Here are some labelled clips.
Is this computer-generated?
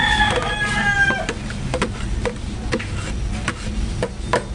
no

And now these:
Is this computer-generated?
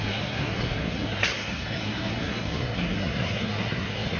yes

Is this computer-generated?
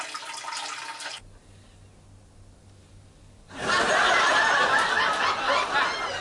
no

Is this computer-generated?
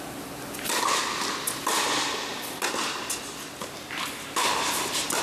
no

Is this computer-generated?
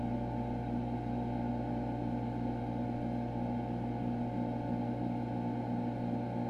no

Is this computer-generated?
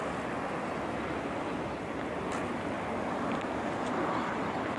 no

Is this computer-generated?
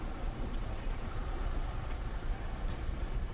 yes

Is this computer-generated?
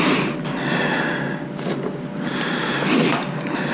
no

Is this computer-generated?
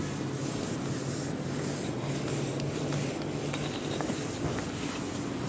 no